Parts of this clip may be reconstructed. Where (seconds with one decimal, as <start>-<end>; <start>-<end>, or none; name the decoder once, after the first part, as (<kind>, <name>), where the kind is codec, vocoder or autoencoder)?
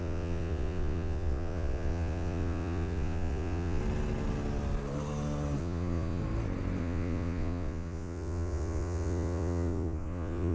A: 0.0-3.8 (vocoder, Vocos); 5.6-6.2; 6.8-10.5